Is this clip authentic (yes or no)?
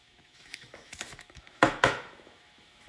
no